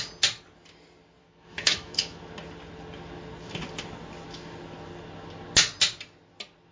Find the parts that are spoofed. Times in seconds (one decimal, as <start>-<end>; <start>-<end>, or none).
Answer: 1.2-2.2

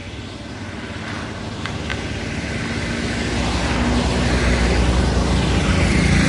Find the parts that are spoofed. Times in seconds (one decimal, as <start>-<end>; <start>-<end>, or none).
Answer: none

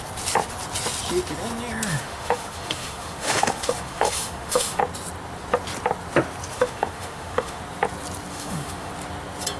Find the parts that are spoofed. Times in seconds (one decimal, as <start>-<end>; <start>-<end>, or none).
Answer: 1.9-4.8; 6.5-7.6; 8.3-8.9

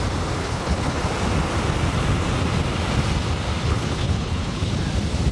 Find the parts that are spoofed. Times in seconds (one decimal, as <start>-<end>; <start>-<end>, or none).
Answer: 0.4-1.0; 3.7-4.7

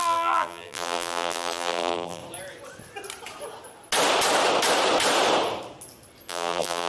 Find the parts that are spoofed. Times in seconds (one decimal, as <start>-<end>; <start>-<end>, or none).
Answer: 0.0-2.2; 6.3-6.9